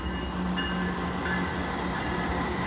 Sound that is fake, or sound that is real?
real